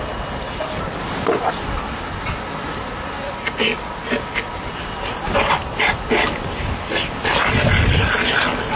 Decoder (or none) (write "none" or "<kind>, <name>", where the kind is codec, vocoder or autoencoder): none